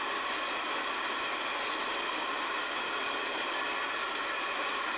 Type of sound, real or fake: real